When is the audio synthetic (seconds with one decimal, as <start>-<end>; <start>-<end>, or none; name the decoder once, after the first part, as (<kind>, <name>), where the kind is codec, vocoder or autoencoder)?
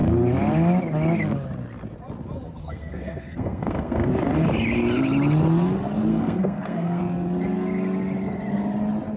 2.6-4.1 (codec, SNAC); 6.1-7.0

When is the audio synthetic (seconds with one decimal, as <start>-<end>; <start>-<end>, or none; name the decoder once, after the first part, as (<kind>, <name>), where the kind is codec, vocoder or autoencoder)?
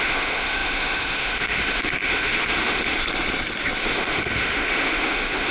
0.0-3.0 (autoencoder, DAC-VAE); 3.8-5.5